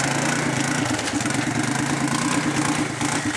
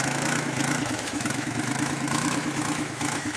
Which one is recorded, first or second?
first